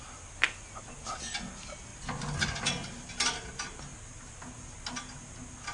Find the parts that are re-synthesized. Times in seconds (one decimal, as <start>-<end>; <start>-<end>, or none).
none